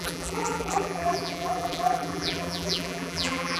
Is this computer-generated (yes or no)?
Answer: yes